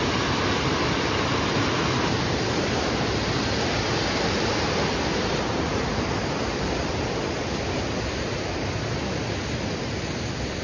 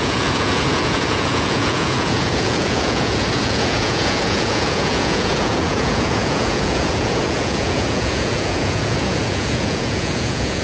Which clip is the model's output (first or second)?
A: second